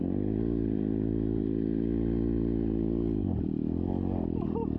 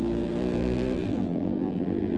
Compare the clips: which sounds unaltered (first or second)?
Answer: first